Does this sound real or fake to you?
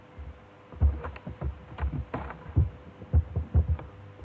real